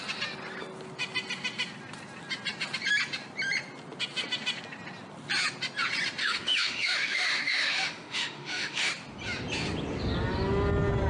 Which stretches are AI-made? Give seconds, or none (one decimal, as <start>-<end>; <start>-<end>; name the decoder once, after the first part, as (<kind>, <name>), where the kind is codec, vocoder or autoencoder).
6.2-8.9 (autoencoder, DAC-VAE)